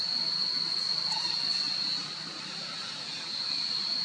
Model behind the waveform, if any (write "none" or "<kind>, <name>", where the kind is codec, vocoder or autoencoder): vocoder, BigVGAN v2